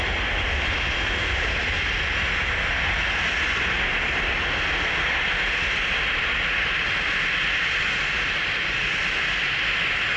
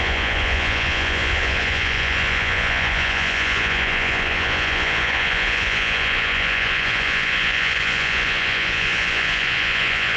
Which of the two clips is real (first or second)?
first